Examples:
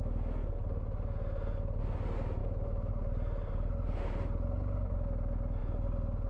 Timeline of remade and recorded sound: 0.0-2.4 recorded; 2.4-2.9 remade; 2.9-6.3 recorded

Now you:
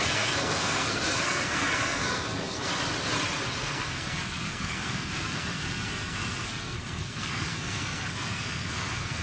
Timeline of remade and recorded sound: 0.0-2.7 remade; 2.7-3.6 recorded; 3.6-9.2 remade

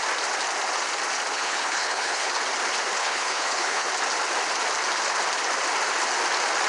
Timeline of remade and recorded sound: 0.0-1.3 recorded; 1.3-2.3 remade; 2.3-3.0 recorded; 3.0-3.9 remade; 3.9-6.7 recorded

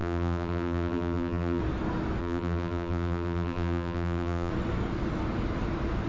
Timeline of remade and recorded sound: 0.0-1.6 remade; 1.6-2.2 recorded; 2.2-4.5 remade; 4.5-6.1 recorded

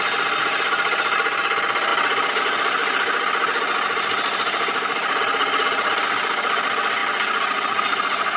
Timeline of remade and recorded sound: 0.0-8.4 recorded

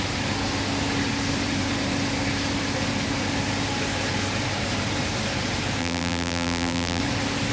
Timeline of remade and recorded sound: 0.0-5.8 recorded; 5.8-7.0 remade; 7.0-7.5 recorded

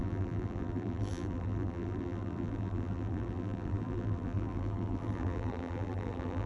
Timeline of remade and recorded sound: 0.0-6.5 remade